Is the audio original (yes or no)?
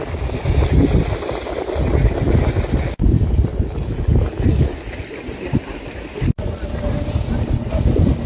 yes